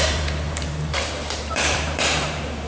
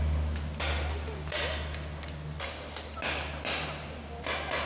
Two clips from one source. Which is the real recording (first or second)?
second